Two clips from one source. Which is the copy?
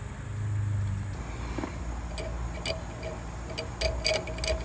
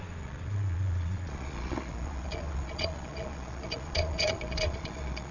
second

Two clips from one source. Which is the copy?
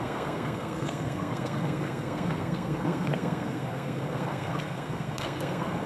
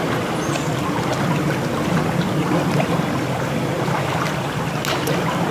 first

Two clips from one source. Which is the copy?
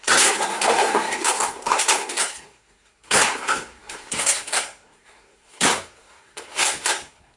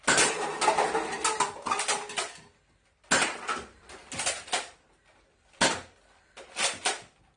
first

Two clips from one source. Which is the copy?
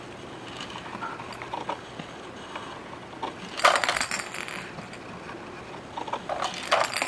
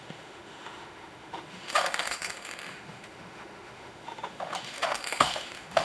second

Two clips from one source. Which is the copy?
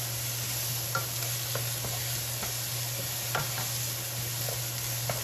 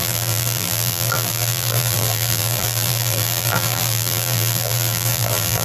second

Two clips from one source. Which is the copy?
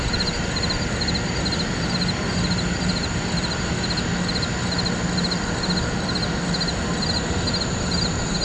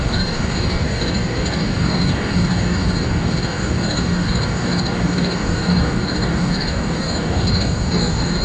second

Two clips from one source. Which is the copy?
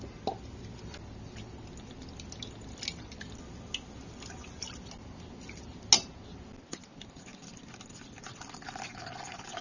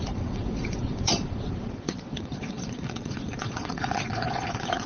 second